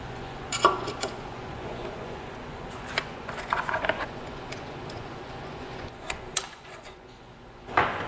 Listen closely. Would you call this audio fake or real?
fake